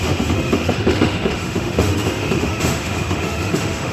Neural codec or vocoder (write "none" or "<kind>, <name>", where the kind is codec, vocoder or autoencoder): autoencoder, DAC-VAE